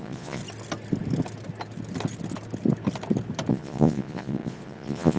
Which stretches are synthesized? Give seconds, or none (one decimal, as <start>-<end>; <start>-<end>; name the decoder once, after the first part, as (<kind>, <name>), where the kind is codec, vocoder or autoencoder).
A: 0.0-0.4 (vocoder, Vocos); 3.5-5.2